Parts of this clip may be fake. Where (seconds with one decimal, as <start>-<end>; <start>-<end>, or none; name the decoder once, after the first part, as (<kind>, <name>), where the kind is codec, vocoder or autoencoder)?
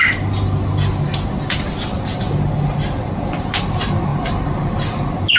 none